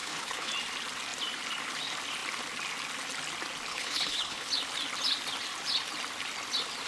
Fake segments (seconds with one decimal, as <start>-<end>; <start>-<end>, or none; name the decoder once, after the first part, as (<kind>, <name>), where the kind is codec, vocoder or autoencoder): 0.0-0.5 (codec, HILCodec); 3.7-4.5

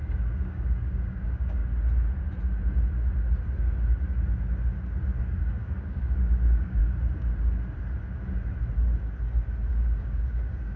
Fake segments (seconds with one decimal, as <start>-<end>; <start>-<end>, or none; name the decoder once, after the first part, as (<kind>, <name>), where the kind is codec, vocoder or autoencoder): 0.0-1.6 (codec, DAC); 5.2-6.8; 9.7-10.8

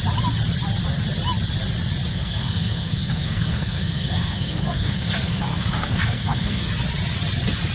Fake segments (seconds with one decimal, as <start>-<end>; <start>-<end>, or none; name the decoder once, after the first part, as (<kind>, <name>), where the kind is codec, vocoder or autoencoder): 2.1-6.7 (codec, SNAC)